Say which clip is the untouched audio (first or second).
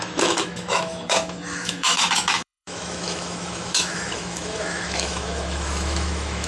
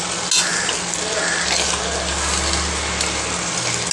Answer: second